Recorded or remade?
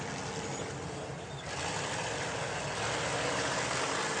recorded